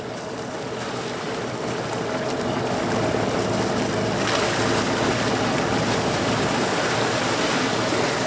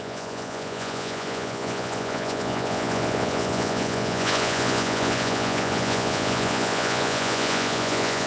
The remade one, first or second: second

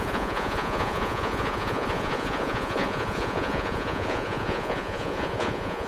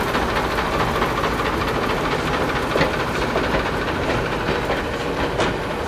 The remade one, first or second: first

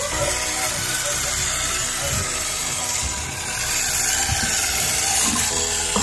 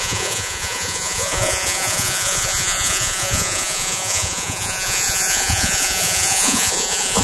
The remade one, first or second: second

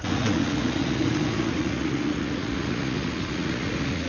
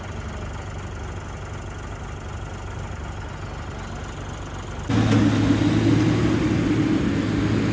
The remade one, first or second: first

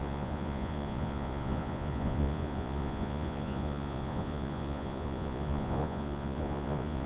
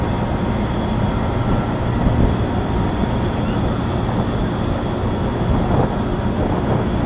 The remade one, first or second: first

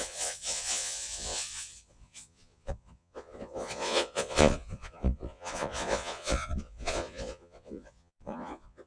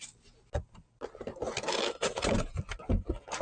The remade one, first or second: first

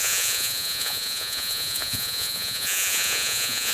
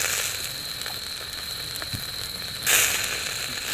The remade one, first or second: first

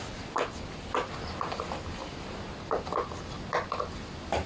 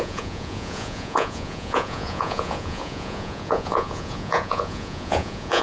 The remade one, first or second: second